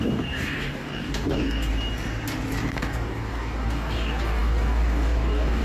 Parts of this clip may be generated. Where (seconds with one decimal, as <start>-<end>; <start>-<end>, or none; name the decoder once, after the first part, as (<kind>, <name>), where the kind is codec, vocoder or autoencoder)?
0.0-1.7 (codec, DAC); 2.6-5.6